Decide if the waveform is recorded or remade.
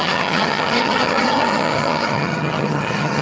remade